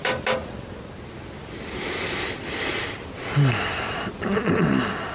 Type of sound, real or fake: real